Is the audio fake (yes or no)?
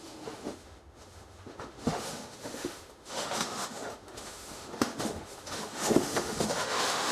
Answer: yes